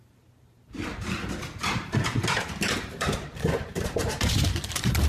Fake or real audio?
fake